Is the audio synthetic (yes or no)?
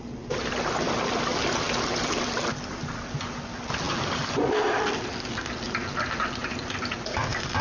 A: yes